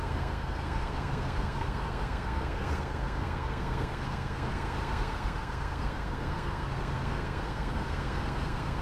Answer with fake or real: fake